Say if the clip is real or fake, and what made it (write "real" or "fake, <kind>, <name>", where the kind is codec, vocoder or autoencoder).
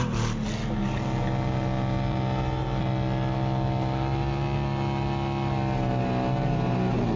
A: real